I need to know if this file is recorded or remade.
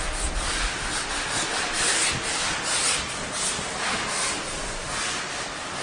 recorded